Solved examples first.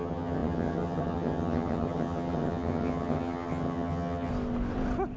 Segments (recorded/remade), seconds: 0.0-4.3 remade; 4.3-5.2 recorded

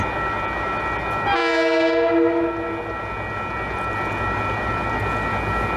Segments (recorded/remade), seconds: 0.0-5.8 recorded

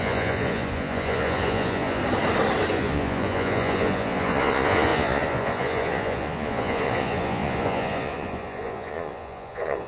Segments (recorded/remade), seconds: 0.0-2.0 remade; 2.0-2.7 recorded; 2.7-9.9 remade

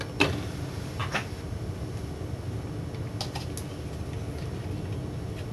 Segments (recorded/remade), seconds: 0.0-5.5 recorded

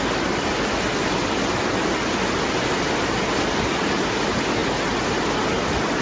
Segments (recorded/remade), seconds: 0.0-6.0 recorded